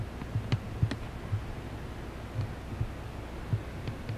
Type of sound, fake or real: real